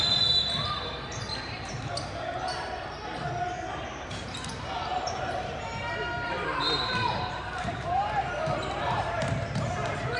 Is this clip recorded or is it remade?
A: remade